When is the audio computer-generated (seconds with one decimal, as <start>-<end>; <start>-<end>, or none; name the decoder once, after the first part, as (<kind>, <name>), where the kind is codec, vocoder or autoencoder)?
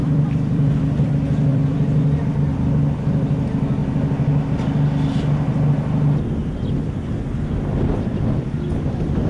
0.0-1.1 (vocoder, BigVGAN v2); 1.5-2.2; 6.4-7.2